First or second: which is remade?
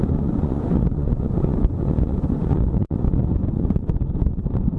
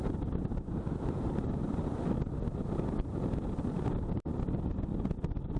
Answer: first